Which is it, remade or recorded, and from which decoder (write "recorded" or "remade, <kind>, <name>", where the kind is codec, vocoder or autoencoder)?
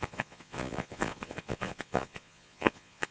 remade, vocoder, Vocos